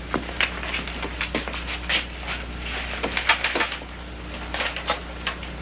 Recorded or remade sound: recorded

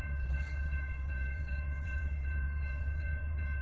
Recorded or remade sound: remade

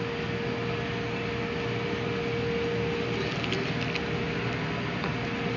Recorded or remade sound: recorded